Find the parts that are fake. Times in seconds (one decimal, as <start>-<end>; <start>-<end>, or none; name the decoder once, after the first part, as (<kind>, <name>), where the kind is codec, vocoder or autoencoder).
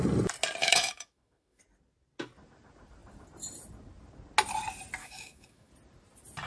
0.6-1.6 (autoencoder, DAC-VAE); 5.0-5.7